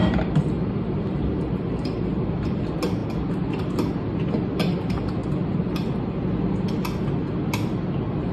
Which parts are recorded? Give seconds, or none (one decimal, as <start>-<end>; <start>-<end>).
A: 2.6-8.3